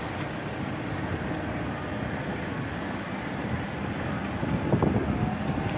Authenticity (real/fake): real